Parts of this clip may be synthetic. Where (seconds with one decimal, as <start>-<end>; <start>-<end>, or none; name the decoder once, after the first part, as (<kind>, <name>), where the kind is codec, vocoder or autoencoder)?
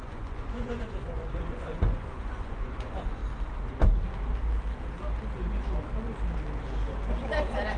0.0-3.2 (vocoder, Vocos)